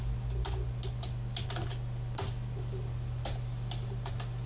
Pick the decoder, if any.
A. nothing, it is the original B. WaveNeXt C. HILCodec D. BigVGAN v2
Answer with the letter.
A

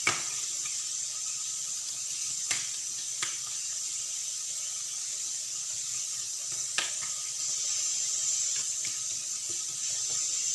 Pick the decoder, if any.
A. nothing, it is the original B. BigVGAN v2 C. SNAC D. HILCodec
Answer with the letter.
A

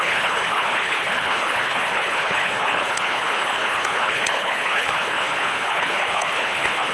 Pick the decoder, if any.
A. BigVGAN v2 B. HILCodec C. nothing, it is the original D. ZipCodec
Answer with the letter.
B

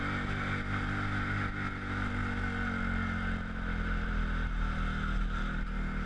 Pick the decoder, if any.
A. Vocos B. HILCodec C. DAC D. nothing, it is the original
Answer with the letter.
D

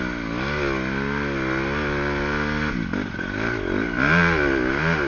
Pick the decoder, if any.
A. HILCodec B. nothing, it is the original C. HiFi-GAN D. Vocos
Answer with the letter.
B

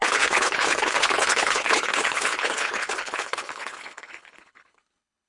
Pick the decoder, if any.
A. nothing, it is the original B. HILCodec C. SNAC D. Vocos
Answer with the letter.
B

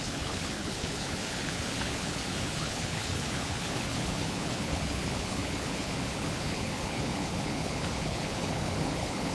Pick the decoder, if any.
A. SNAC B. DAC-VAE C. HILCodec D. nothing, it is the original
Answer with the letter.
C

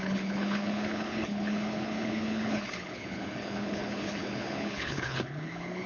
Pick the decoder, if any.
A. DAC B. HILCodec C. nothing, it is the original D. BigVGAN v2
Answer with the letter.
B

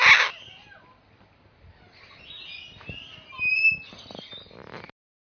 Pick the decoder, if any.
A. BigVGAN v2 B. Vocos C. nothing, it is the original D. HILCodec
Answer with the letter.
C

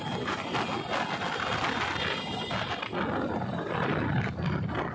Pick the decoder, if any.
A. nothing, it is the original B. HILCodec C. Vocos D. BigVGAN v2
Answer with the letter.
A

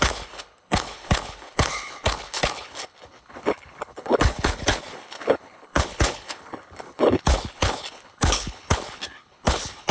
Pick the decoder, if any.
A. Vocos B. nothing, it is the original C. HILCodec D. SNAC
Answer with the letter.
C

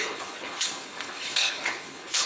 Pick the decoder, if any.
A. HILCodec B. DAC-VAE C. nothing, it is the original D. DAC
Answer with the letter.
A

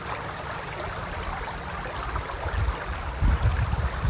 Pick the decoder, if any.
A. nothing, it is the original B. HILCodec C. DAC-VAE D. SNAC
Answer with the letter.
A